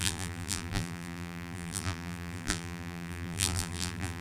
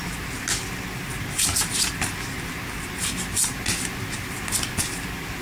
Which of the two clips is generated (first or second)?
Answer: first